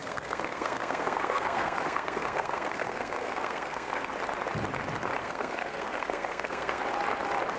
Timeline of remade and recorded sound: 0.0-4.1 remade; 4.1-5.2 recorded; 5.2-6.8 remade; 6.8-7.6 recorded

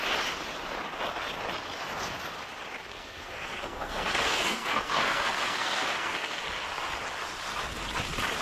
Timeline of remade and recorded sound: 0.0-2.9 recorded; 2.9-6.4 remade; 6.4-8.4 recorded

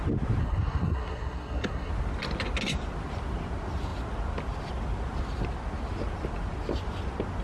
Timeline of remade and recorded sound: 0.0-0.4 recorded; 0.4-1.9 remade; 1.9-7.4 recorded

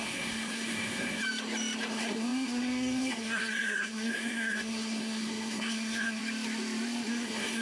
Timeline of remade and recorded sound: 0.0-1.2 remade; 1.2-1.9 recorded; 1.9-6.2 remade; 6.2-7.1 recorded; 7.1-7.6 remade